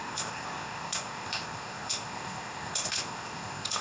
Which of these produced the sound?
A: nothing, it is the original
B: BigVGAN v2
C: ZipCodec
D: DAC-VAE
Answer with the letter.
C